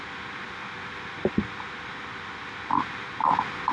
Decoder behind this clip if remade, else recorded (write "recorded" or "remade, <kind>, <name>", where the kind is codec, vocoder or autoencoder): recorded